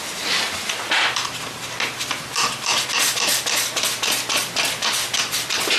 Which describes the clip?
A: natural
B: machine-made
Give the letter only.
A